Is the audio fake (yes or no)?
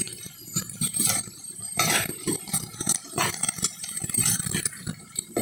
yes